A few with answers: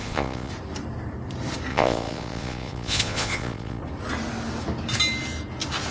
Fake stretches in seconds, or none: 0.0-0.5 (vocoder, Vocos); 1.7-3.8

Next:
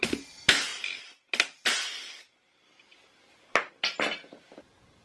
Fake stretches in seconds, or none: none

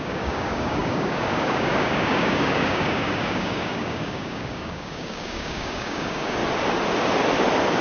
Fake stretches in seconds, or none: 0.0-6.4 (codec, DAC)

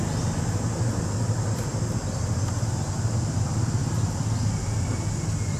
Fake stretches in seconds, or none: none

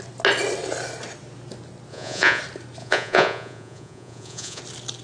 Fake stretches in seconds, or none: 1.9-2.4 (vocoder, Vocos); 2.8-4.6

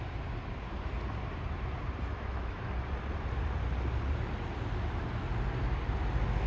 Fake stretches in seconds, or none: 2.1-2.7 (autoencoder, DAC-VAE)